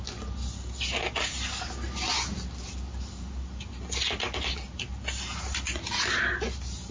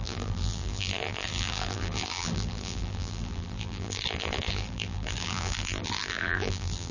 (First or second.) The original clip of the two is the first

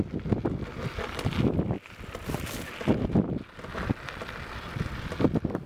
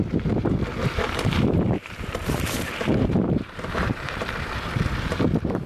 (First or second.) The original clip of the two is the first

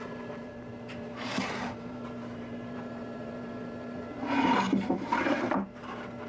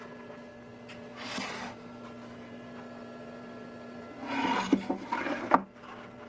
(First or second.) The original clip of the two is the second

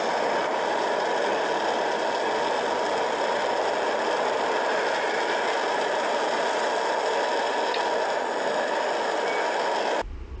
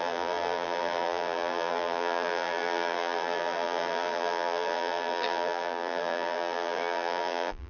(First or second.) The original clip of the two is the first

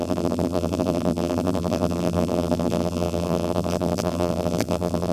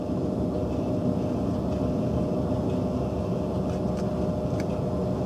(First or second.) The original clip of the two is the second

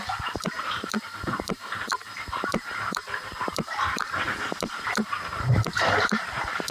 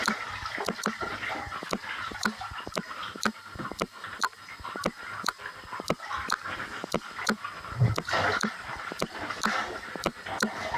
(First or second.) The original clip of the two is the second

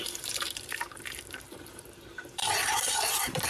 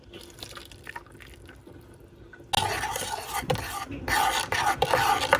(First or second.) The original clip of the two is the second